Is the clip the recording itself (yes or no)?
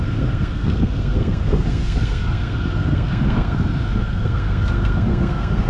no